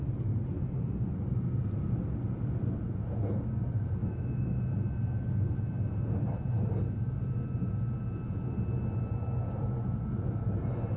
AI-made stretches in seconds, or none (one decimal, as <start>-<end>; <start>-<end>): 4.0-4.6